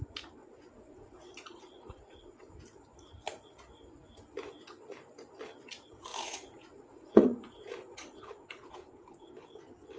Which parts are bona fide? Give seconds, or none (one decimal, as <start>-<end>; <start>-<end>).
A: 0.0-0.4; 2.5-6.1; 9.3-10.0